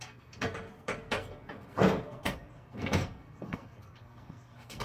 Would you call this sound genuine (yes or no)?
no